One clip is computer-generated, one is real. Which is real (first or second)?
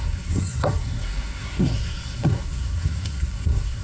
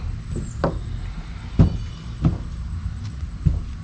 second